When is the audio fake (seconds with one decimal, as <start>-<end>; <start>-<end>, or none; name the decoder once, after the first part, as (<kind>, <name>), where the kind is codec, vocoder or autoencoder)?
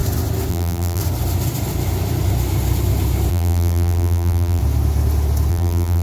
0.5-1.0 (vocoder, BigVGAN v2); 3.3-4.6; 5.5-6.0